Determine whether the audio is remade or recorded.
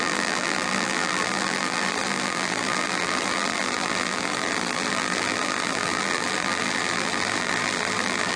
remade